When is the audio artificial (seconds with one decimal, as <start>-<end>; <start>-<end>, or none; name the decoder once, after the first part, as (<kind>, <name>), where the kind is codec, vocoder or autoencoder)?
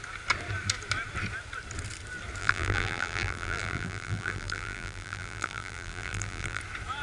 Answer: 2.4-6.6 (vocoder, BigVGAN v2)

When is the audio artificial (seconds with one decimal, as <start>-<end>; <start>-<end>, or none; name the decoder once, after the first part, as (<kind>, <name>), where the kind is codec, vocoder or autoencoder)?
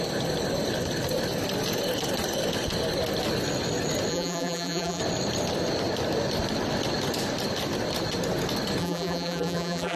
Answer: 4.1-5.0 (vocoder, BigVGAN v2); 8.8-10.0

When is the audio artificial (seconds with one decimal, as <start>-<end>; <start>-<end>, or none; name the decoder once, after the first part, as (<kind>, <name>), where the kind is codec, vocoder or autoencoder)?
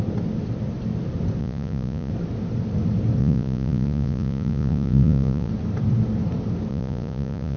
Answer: 1.4-2.1 (vocoder, Vocos); 3.2-5.5; 6.7-7.6